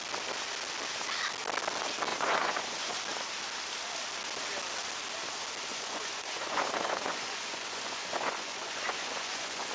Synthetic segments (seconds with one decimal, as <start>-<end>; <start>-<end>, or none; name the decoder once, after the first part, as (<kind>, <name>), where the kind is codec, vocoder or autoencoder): 2.1-3.0 (vocoder, Vocos); 5.7-9.7